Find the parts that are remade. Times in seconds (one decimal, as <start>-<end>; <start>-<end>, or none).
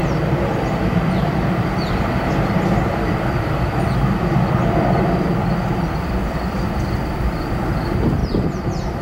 0.0-9.0